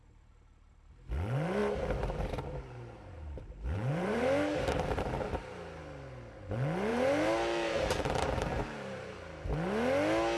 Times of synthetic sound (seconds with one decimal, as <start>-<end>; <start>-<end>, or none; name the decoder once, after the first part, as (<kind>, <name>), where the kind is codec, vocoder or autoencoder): 1.6-5.8 (vocoder, BigVGAN v2); 6.9-9.2